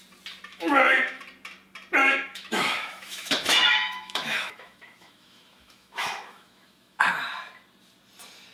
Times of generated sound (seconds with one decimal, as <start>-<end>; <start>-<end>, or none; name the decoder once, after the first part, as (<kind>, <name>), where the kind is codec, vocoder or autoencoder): 0.5-1.2 (autoencoder, DAC-VAE); 2.0-7.0